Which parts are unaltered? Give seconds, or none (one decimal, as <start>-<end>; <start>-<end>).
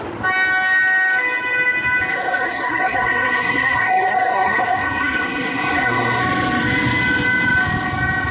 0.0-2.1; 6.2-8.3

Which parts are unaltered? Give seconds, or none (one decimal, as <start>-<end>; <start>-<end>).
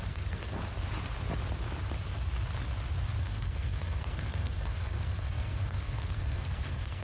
0.6-3.2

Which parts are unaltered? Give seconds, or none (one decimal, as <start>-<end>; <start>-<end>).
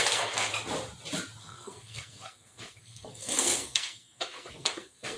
0.5-1.4